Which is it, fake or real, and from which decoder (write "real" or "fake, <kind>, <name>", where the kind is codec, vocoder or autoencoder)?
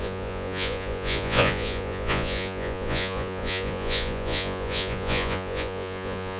fake, vocoder, Vocos